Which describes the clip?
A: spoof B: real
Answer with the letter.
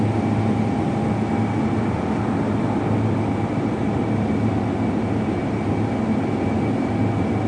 B